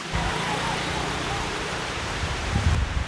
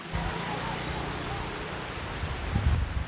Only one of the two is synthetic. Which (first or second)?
first